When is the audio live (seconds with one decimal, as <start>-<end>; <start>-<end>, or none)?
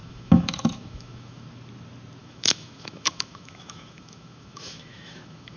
1.4-2.2